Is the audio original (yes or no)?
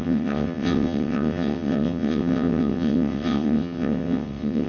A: no